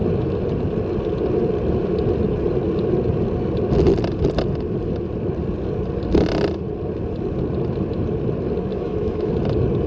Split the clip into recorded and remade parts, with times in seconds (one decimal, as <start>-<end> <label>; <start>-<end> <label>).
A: 0.0-8.7 recorded; 8.7-9.3 remade; 9.3-9.9 recorded